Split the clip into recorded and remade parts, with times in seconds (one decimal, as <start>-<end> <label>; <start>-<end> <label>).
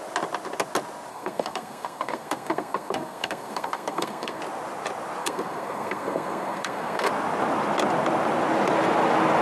0.0-1.1 recorded; 1.1-4.4 remade; 4.4-5.2 recorded; 5.2-7.1 remade; 7.1-9.4 recorded